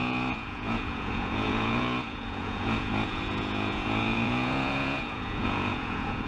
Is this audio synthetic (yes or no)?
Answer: yes